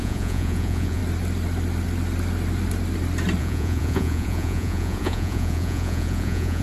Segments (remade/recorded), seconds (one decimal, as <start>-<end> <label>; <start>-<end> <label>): 0.0-1.0 remade; 1.0-3.4 recorded; 3.4-6.6 remade